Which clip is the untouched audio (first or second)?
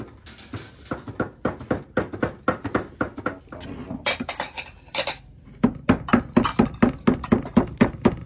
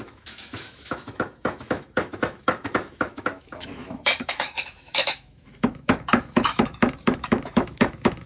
first